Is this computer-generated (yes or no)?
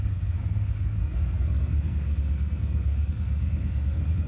yes